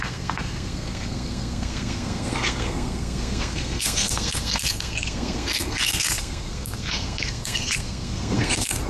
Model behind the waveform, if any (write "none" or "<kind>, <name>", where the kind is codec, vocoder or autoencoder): codec, SNAC